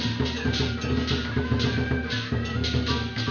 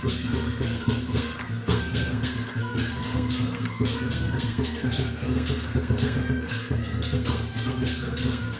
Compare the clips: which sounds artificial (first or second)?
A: second